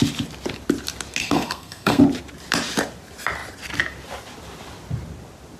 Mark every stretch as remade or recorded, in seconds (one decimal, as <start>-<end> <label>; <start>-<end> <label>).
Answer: 0.0-1.2 recorded; 1.2-2.0 remade; 2.0-5.6 recorded